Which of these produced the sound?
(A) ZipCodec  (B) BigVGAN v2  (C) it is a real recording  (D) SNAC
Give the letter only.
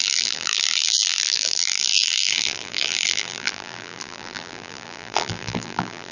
B